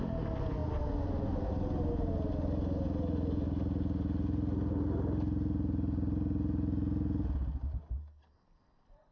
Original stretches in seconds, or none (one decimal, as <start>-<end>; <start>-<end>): 0.0-9.1